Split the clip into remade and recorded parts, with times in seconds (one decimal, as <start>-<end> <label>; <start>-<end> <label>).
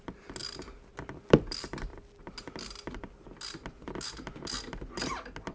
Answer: 0.0-5.5 recorded